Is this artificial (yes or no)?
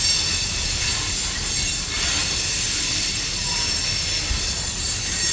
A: no